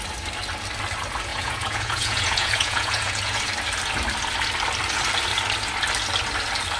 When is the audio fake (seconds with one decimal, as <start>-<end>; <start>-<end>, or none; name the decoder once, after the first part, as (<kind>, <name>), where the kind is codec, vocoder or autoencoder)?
1.3-3.4 (vocoder, Vocos)